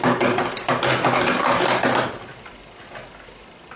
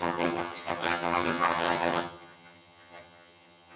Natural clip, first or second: first